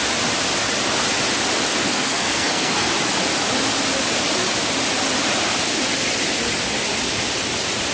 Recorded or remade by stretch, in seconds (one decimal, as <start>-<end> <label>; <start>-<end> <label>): 0.0-1.7 recorded; 1.7-2.9 remade; 2.9-7.9 recorded

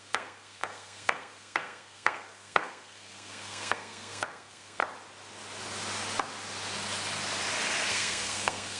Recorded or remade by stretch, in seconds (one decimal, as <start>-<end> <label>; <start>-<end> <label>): 0.0-4.8 remade; 4.8-7.9 recorded; 7.9-8.8 remade

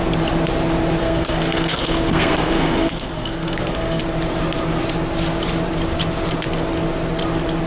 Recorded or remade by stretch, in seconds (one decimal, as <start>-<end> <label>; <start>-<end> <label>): 0.0-1.0 recorded; 1.0-4.0 remade; 4.0-7.7 recorded

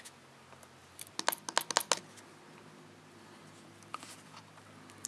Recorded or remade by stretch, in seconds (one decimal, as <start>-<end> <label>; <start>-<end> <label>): 0.0-5.1 recorded